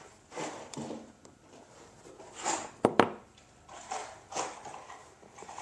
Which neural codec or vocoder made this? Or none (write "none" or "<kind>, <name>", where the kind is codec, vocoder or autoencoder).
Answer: vocoder, BigVGAN v2